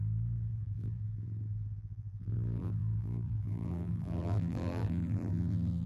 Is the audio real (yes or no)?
no